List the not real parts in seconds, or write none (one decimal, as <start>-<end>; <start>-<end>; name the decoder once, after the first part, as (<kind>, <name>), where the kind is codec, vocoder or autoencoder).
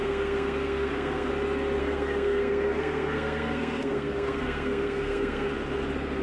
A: 0.0-1.3 (codec, SNAC); 1.8-5.5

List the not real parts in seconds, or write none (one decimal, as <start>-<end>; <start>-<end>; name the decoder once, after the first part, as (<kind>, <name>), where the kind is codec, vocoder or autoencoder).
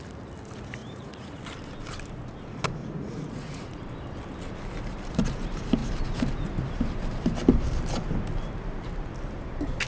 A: 0.8-1.4 (vocoder, Vocos); 2.8-3.8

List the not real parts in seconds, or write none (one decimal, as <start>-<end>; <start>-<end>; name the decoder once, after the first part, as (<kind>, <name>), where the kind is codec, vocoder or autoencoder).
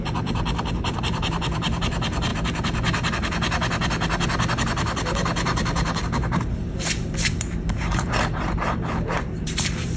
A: 0.0-2.3 (vocoder, BigVGAN v2); 6.0-10.0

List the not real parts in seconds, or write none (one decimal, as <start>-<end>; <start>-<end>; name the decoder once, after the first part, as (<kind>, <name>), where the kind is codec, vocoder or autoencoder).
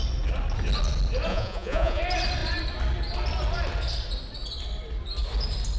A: 1.3-2.0 (vocoder, Vocos)